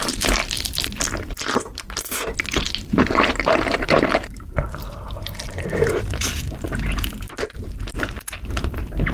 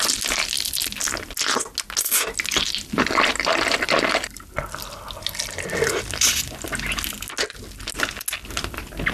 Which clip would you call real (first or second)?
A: second